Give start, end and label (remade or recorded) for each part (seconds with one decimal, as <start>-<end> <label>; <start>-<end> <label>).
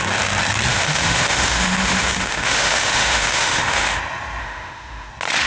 0.0-0.7 recorded; 0.7-4.0 remade; 4.0-4.4 recorded; 4.4-5.1 remade; 5.1-5.5 recorded